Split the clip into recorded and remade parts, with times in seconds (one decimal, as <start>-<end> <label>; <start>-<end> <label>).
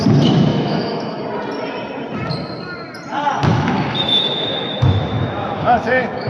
0.0-0.5 recorded; 0.5-1.2 remade; 1.2-3.5 recorded; 3.5-6.3 remade